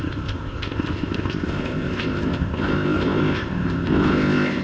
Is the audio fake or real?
fake